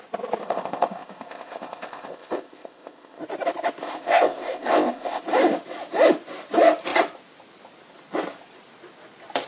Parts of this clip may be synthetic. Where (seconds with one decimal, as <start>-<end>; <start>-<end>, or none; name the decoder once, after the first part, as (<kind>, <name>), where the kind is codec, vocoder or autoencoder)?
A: 0.4-3.2 (codec, ZipCodec); 3.8-5.2

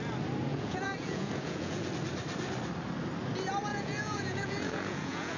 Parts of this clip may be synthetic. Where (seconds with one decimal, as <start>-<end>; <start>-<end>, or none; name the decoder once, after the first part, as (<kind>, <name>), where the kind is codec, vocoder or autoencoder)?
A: 0.5-1.9 (vocoder, Vocos); 3.7-5.4

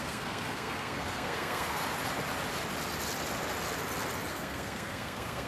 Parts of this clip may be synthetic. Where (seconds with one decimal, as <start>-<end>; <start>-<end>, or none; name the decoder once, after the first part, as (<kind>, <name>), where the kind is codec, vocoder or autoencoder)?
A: 0.0-1.8 (codec, SNAC); 4.3-5.5

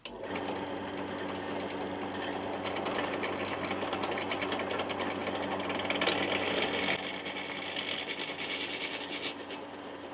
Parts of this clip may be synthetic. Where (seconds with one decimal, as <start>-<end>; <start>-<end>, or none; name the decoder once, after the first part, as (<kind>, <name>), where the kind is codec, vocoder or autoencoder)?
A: none

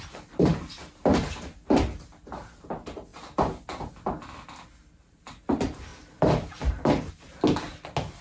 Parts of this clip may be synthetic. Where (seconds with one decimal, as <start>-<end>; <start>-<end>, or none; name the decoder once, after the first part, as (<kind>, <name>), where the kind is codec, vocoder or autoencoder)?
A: 5.9-7.1 (vocoder, BigVGAN v2)